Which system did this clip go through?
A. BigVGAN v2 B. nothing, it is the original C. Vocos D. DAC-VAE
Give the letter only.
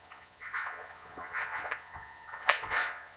C